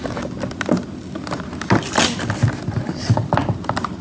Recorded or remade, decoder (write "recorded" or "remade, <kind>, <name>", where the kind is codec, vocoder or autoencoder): recorded